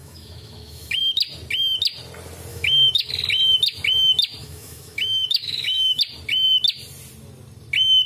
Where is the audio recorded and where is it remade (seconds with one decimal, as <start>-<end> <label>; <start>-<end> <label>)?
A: 0.0-1.0 remade; 1.0-2.5 recorded; 2.5-3.1 remade; 3.1-4.4 recorded; 4.4-6.0 remade; 6.0-8.1 recorded